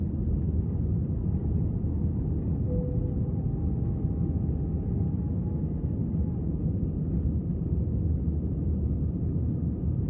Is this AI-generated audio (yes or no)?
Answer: no